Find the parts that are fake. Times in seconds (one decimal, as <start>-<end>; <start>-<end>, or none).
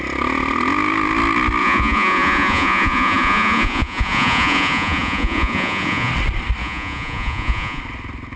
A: 1.6-6.1; 6.6-7.8